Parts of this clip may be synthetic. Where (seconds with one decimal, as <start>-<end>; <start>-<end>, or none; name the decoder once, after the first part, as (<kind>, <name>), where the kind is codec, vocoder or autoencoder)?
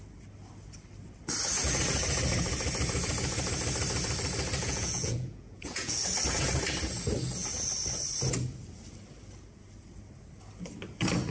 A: 4.6-6.0 (vocoder, Vocos)